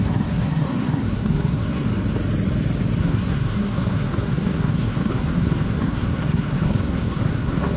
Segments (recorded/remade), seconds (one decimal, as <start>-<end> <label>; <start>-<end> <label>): 0.0-1.9 remade; 1.9-3.0 recorded; 3.0-7.8 remade